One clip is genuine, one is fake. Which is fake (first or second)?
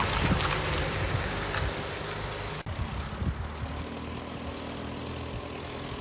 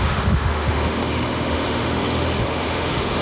second